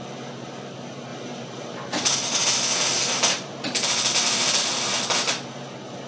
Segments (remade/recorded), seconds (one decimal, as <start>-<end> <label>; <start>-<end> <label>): 0.0-1.1 recorded; 1.1-2.1 remade; 2.1-3.0 recorded; 3.0-5.0 remade; 5.0-6.1 recorded